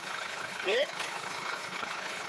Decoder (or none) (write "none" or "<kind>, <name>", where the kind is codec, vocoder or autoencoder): codec, HILCodec